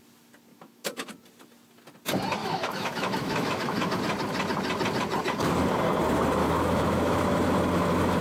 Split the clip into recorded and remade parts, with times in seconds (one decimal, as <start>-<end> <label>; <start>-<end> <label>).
0.0-0.5 recorded; 0.5-1.1 remade; 1.1-2.4 recorded; 2.4-4.0 remade; 4.0-6.4 recorded; 6.4-7.2 remade; 7.2-8.2 recorded